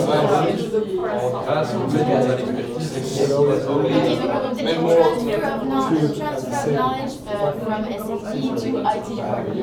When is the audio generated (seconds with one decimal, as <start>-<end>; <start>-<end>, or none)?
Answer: 0.0-1.0; 1.9-3.1; 4.6-9.6